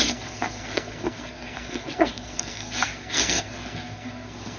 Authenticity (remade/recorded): remade